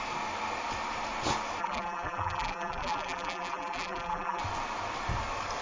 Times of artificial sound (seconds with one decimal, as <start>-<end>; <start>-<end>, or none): 1.6-4.4